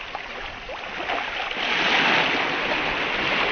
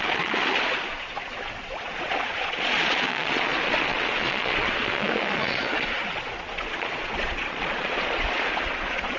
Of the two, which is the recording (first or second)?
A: first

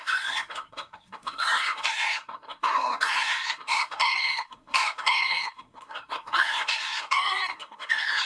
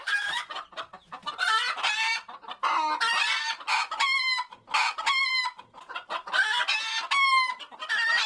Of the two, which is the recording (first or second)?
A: second